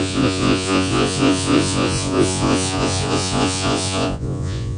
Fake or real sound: fake